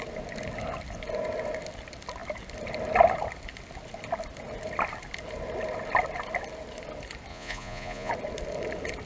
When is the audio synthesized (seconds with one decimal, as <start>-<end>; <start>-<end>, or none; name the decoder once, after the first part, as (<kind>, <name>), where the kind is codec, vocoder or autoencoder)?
7.3-8.1 (vocoder, Vocos)